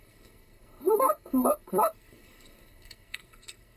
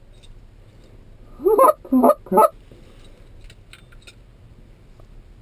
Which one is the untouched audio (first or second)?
second